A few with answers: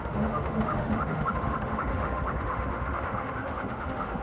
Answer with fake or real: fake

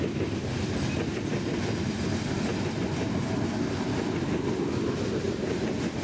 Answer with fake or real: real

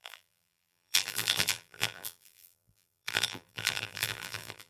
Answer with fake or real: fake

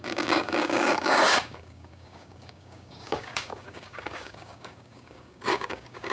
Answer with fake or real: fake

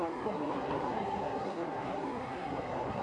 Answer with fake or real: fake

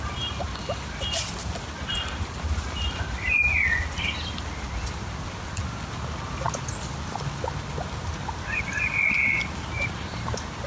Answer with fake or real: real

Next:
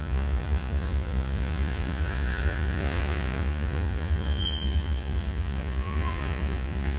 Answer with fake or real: fake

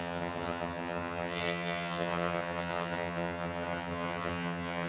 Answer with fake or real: fake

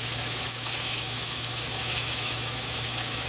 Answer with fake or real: fake